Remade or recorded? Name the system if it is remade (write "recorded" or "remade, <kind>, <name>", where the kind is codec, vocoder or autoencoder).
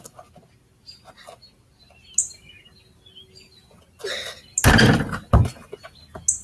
recorded